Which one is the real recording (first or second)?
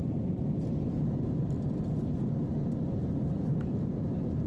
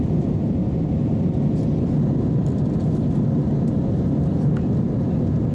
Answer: second